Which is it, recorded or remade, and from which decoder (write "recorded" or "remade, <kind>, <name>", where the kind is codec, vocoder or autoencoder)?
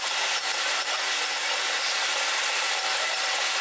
recorded